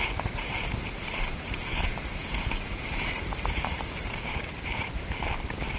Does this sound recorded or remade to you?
remade